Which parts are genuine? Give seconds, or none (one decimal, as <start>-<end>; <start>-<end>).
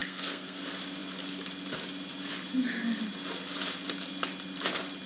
0.6-5.1